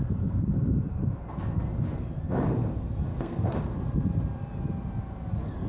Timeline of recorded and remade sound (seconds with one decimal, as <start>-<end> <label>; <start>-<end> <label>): 0.0-3.1 recorded; 3.1-3.6 remade; 3.6-5.7 recorded